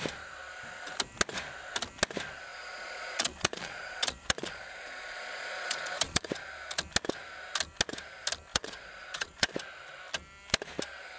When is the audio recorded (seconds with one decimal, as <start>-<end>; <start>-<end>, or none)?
0.0-2.5; 6.3-8.5; 9.5-11.2